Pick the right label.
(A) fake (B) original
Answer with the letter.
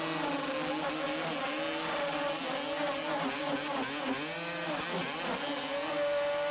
B